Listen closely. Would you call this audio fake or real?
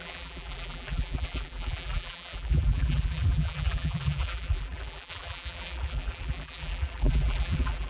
fake